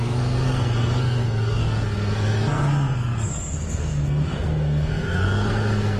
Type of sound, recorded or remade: remade